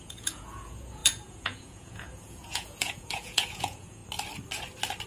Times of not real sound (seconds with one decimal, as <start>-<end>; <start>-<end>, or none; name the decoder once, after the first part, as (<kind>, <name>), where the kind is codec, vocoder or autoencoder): 0.0-4.0 (vocoder, Vocos)